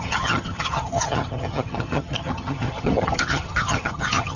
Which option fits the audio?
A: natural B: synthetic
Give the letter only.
B